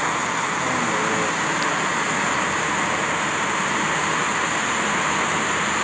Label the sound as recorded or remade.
recorded